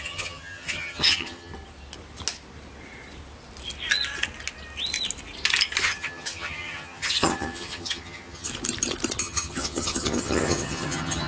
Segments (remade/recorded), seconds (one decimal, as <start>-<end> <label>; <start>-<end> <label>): 0.0-1.5 remade; 1.5-5.8 recorded; 5.8-8.5 remade; 8.5-9.2 recorded; 9.2-11.3 remade